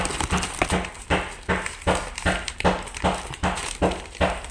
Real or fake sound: real